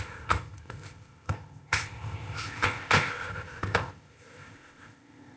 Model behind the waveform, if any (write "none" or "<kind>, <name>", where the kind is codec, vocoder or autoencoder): codec, ZipCodec